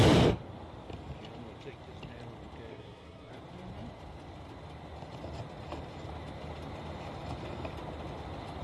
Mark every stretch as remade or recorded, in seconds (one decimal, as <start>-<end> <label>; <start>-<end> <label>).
0.0-2.7 recorded; 2.7-3.3 remade; 3.3-8.6 recorded